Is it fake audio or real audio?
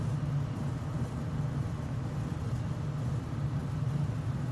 real